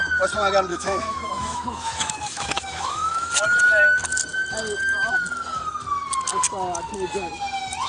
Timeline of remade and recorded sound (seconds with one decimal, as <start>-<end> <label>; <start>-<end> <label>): 0.0-0.7 recorded; 0.7-3.3 remade; 3.3-7.9 recorded

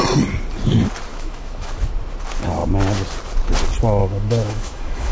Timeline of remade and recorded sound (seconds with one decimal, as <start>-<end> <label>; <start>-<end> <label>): 0.0-1.1 recorded; 1.1-1.7 remade; 1.7-4.0 recorded; 4.0-5.1 remade

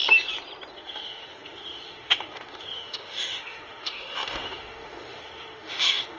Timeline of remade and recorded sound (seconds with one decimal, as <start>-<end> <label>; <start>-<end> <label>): 0.0-0.7 recorded; 0.7-6.2 remade

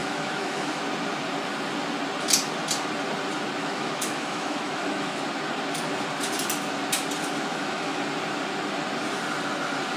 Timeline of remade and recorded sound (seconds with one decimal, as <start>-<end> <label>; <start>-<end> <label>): 0.0-0.8 remade; 0.8-3.6 recorded; 3.6-5.2 remade; 5.2-7.5 recorded; 7.5-8.0 remade; 8.0-10.0 recorded

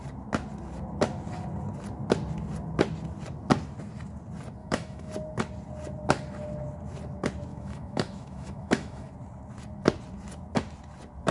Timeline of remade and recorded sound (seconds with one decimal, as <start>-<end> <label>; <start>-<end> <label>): 0.0-4.6 recorded; 4.6-5.1 remade; 5.1-7.5 recorded; 7.5-9.1 remade; 9.1-11.3 recorded

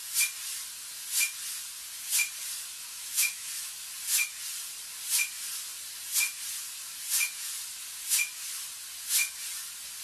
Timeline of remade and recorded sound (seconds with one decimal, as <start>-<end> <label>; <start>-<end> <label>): 0.0-2.9 recorded; 2.9-3.5 remade; 3.5-10.0 recorded